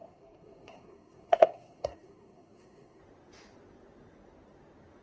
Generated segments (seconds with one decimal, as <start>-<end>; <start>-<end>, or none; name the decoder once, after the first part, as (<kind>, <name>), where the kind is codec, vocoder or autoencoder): 0.0-3.0 (codec, SNAC)